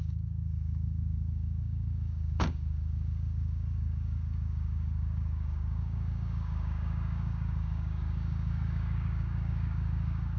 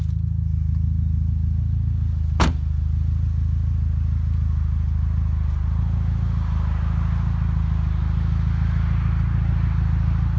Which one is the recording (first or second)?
second